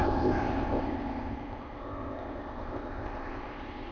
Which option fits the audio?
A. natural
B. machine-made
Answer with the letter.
B